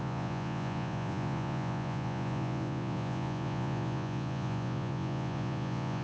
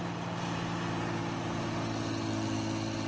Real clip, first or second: second